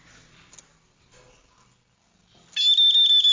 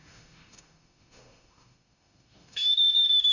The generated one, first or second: second